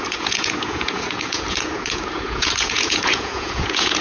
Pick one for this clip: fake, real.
fake